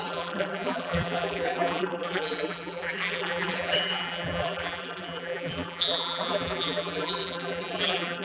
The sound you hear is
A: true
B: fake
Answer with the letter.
B